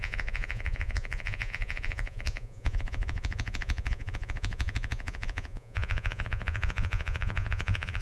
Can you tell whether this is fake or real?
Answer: fake